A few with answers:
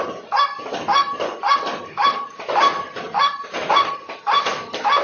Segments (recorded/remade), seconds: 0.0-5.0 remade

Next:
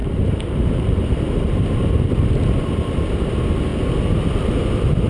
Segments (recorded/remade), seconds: 0.0-2.2 remade; 2.2-5.1 recorded

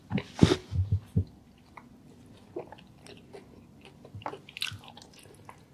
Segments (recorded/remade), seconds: 0.0-5.7 recorded

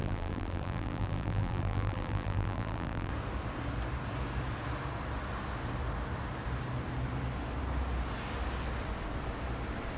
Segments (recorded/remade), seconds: 0.0-3.1 remade; 3.1-10.0 recorded

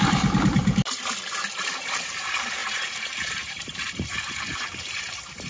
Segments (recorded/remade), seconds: 0.0-0.6 remade; 0.6-1.6 recorded; 1.6-5.5 remade

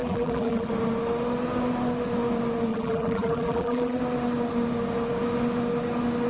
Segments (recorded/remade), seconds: 0.0-0.7 remade; 0.7-2.7 recorded; 2.7-4.0 remade; 4.0-6.3 recorded

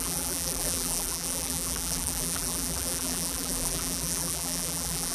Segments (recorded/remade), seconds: 0.0-5.1 remade